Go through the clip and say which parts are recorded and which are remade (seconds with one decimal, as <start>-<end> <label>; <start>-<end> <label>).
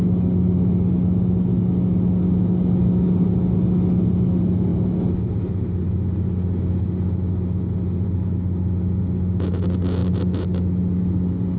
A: 0.0-11.6 recorded